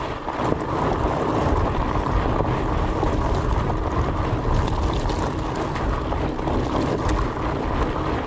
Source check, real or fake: real